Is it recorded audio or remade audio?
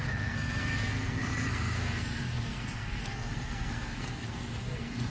remade